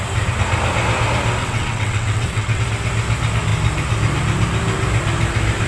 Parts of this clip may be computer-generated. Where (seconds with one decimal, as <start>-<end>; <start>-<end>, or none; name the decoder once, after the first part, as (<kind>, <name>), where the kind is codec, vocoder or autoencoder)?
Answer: 1.4-2.6 (vocoder, WaveNeXt)